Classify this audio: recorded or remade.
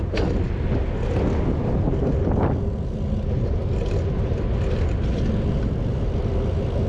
recorded